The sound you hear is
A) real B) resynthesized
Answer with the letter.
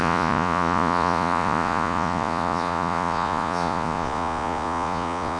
B